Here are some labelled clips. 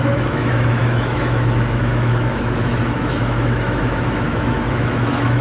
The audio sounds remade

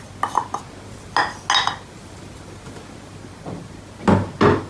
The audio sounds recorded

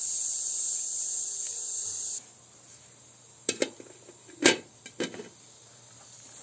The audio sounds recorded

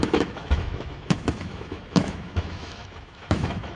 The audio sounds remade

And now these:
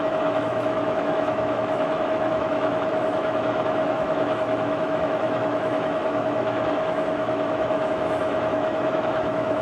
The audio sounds remade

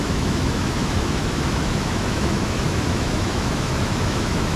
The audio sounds remade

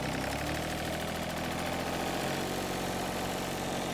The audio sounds recorded